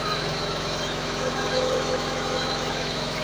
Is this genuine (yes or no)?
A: no